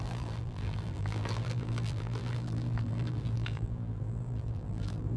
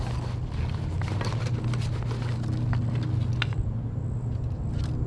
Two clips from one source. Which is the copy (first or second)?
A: first